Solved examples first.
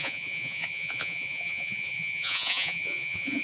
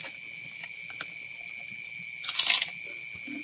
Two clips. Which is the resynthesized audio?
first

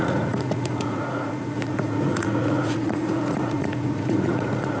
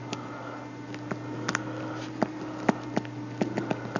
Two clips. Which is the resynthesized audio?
first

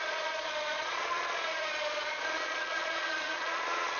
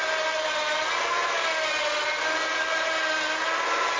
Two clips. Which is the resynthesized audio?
first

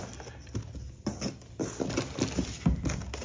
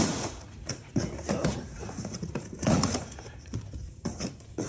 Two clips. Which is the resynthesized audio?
second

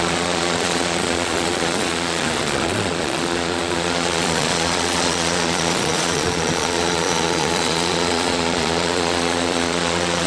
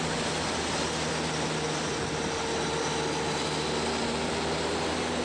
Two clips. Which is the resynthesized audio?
first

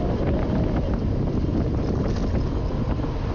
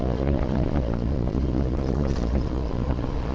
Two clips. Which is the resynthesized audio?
second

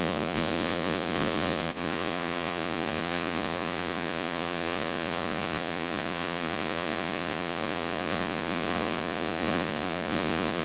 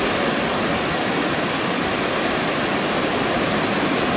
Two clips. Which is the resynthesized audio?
first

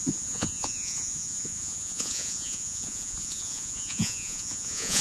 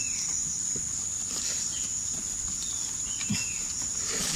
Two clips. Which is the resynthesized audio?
first